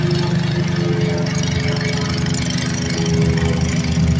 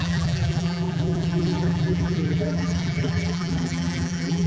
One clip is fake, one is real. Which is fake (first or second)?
second